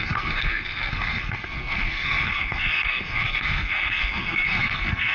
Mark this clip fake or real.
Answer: fake